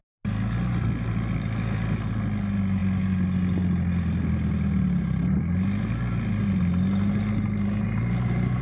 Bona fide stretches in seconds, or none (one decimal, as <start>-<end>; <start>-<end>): 0.0-8.6